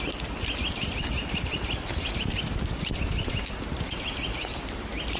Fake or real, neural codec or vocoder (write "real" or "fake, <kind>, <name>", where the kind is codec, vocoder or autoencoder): real